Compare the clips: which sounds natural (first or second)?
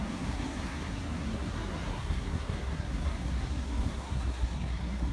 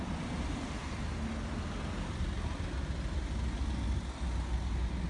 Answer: second